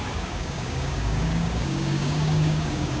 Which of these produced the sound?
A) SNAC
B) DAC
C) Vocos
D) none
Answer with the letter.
B